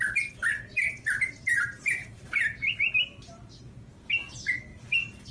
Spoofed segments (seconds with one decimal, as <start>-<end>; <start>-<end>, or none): 0.4-3.6; 4.7-5.3